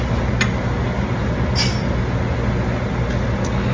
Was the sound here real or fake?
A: real